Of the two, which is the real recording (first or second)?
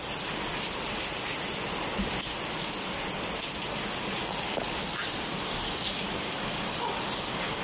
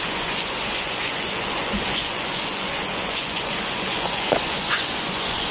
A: first